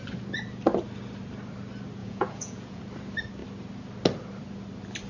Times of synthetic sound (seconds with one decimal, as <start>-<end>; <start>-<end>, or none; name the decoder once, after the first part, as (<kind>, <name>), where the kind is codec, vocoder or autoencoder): 2.0-2.8 (vocoder, Vocos)